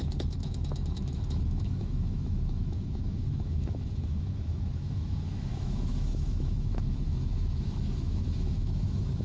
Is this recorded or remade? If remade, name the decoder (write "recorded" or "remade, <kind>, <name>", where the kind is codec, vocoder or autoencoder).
remade, autoencoder, DAC-VAE